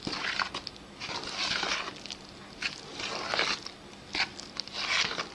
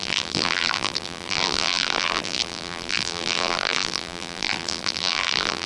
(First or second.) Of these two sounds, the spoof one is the second